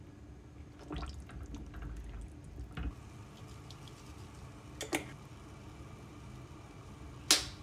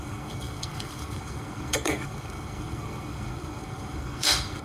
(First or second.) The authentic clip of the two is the first